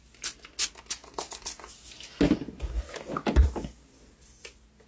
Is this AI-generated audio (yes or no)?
no